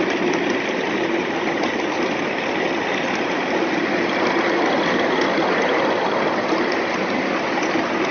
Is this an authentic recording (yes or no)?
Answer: yes